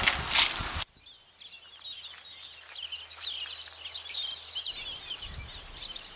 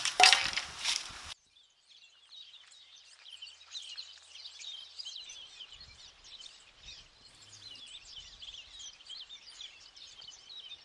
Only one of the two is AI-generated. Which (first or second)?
second